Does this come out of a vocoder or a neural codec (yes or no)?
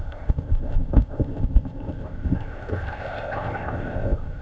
yes